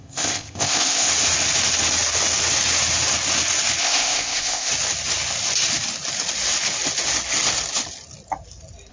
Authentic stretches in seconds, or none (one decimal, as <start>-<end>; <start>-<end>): 1.1-3.8; 4.7-8.9